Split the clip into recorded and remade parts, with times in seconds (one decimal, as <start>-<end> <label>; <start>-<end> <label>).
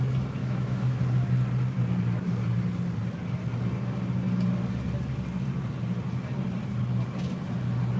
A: 0.0-0.4 recorded; 0.4-1.0 remade; 1.0-8.0 recorded